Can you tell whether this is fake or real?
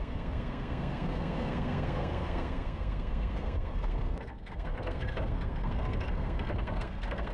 fake